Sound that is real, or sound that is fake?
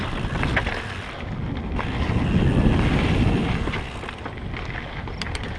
real